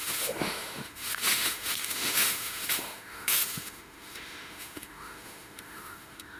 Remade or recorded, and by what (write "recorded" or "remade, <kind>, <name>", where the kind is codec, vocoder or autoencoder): remade, autoencoder, DAC-VAE